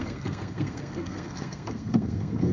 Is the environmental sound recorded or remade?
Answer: remade